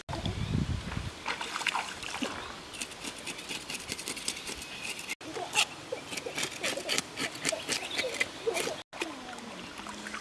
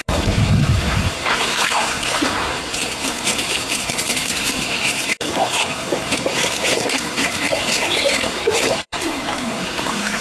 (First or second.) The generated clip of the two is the second